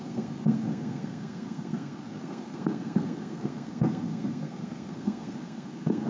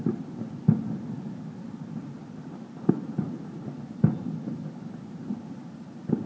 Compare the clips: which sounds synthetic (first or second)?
first